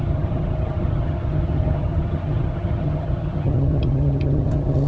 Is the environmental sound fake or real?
fake